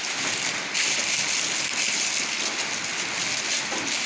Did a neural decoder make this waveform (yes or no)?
no